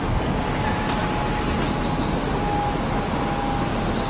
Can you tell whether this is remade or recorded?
recorded